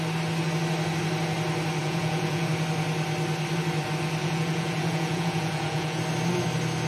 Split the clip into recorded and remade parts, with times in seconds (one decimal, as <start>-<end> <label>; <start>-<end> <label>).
0.0-1.8 recorded; 1.8-2.5 remade; 2.5-4.2 recorded; 4.2-6.0 remade; 6.0-6.9 recorded